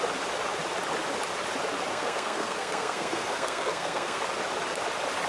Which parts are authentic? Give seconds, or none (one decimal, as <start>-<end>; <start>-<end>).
0.0-1.9; 4.2-5.3